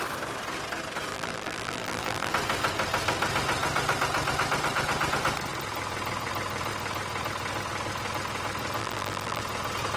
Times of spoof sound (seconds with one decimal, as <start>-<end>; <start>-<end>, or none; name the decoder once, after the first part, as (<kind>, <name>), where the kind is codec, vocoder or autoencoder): 1.1-2.3 (vocoder, BigVGAN v2); 8.8-9.4